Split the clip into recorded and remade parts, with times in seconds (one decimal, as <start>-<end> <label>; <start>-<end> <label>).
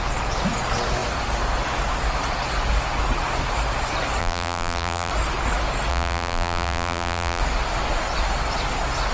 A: 0.0-4.2 recorded; 4.2-5.1 remade; 5.1-5.9 recorded; 5.9-7.4 remade; 7.4-9.1 recorded